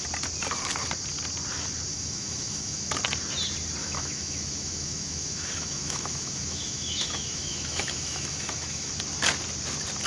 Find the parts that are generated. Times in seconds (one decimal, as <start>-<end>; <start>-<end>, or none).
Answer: 1.9-2.9; 3.8-8.9